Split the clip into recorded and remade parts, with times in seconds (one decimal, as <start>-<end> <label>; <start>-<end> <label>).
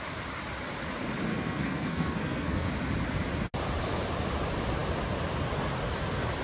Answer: 0.0-1.3 recorded; 1.3-2.7 remade; 2.7-6.4 recorded